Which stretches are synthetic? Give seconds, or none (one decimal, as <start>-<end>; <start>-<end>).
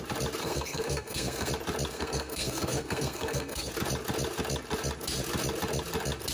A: 0.4-1.5; 1.9-3.7